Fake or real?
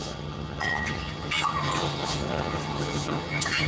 fake